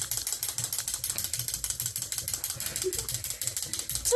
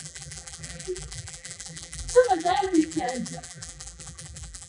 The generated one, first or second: second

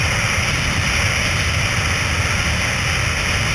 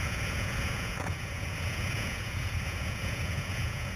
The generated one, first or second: second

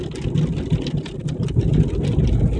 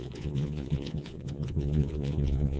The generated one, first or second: second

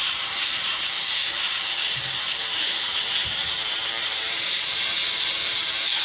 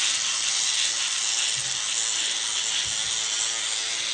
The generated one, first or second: first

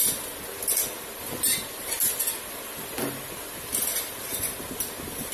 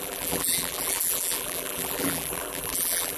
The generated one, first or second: second